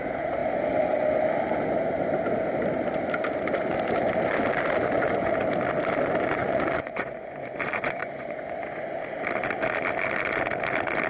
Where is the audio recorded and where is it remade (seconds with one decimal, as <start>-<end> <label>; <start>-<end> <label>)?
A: 0.0-6.4 recorded; 6.4-9.0 remade; 9.0-11.1 recorded